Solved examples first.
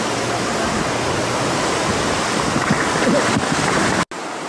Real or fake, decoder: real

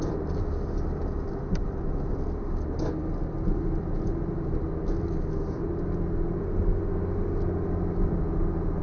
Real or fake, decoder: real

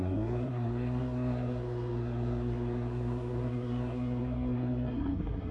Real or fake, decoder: fake, codec, SNAC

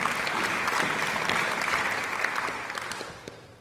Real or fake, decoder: real